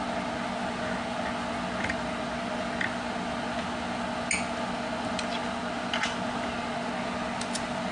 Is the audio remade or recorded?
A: recorded